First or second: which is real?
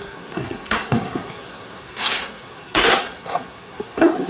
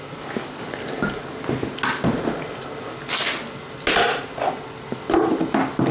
second